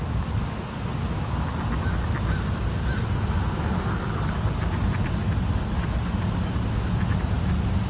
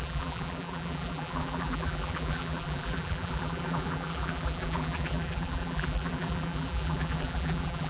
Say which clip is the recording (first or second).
first